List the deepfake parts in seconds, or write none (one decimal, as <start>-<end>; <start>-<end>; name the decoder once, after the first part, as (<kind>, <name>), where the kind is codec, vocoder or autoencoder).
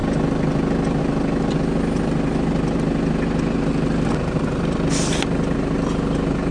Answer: none